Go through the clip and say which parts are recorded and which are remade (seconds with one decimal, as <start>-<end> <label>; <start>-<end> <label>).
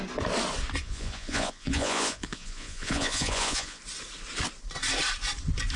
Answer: 0.0-0.8 recorded; 0.8-3.8 remade; 3.8-5.8 recorded